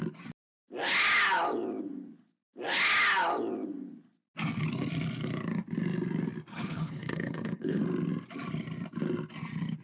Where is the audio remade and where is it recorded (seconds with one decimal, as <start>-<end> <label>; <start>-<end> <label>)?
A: 0.0-6.5 recorded; 6.5-7.8 remade; 7.8-9.8 recorded